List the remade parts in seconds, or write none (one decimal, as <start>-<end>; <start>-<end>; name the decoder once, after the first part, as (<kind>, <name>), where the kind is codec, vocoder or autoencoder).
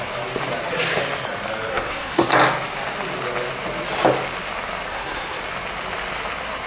1.7-2.3 (codec, SNAC); 4.9-5.4